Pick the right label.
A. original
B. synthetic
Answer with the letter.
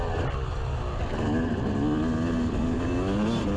A